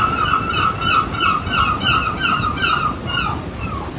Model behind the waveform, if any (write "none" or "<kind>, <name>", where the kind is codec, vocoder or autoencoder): none